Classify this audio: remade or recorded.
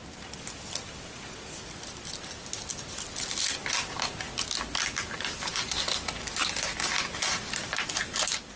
recorded